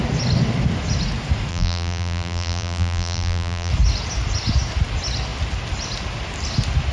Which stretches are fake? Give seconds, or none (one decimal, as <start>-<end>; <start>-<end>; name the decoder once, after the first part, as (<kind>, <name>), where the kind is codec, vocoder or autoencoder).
1.5-3.7 (vocoder, BigVGAN v2)